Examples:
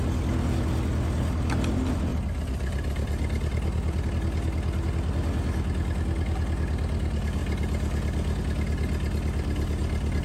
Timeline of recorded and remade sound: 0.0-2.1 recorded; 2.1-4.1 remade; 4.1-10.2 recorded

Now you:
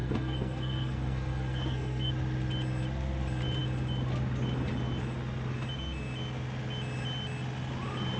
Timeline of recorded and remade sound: 0.0-2.1 remade; 2.1-8.2 recorded

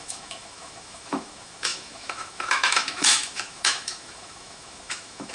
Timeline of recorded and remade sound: 0.0-5.3 remade

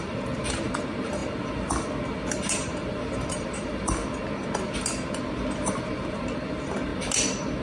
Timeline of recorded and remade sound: 0.0-4.0 remade; 4.0-5.8 recorded; 5.8-6.9 remade; 6.9-7.6 recorded

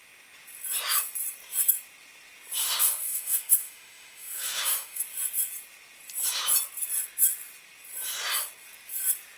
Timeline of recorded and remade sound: 0.0-2.6 recorded; 2.6-5.0 remade; 5.0-9.4 recorded

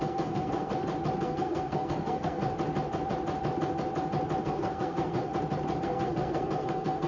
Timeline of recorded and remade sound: 0.0-0.7 remade; 0.7-1.2 recorded; 1.2-2.4 remade; 2.4-4.4 recorded; 4.4-5.3 remade; 5.3-5.8 recorded; 5.8-7.1 remade

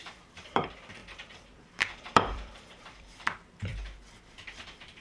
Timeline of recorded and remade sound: 0.0-3.7 remade; 3.7-4.5 recorded; 4.5-5.0 remade

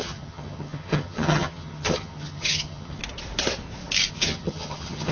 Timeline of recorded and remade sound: 0.0-3.0 remade; 3.0-4.1 recorded; 4.1-5.1 remade